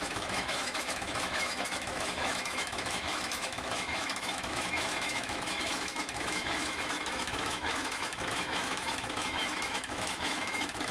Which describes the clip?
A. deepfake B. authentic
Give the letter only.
A